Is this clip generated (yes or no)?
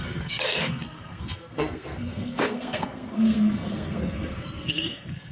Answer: yes